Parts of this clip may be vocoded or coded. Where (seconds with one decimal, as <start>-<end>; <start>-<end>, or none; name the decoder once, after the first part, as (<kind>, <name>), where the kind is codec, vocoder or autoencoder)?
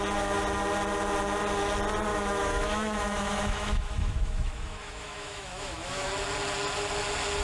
2.1-6.1 (autoencoder, DAC-VAE)